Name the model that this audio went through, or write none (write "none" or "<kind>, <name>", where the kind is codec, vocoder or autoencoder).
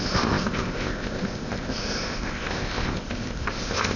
codec, ZipCodec